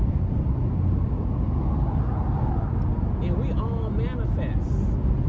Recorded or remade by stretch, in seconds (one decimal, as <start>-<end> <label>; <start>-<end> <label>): 0.0-5.3 recorded